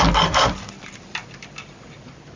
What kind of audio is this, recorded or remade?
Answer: remade